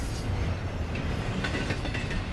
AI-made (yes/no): no